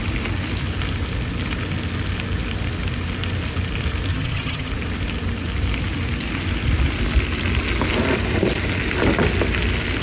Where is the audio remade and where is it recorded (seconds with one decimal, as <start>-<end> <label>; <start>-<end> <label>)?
0.0-4.1 recorded; 4.1-4.7 remade; 4.7-10.0 recorded